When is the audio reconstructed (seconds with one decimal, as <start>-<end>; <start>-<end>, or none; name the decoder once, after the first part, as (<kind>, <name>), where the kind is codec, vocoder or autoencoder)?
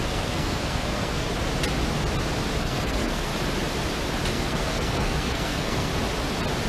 0.0-1.3 (codec, SNAC); 2.6-3.3; 4.3-5.9